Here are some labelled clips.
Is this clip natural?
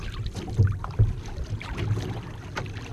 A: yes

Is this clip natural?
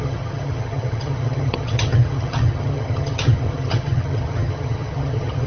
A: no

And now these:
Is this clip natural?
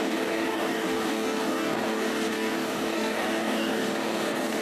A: no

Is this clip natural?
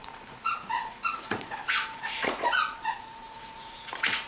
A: no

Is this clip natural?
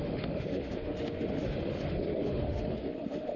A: no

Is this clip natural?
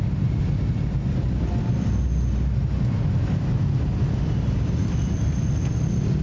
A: yes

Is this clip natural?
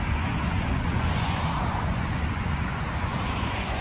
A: no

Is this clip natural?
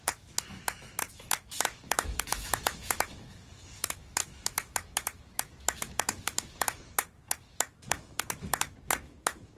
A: no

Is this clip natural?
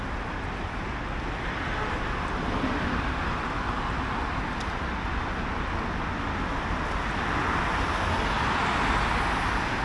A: yes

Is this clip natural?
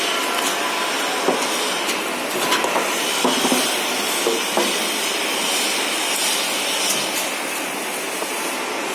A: yes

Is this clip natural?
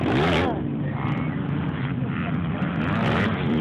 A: yes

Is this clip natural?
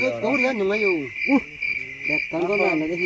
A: yes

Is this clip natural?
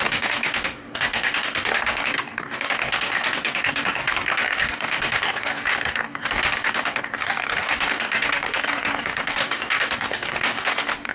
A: no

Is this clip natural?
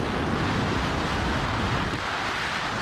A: yes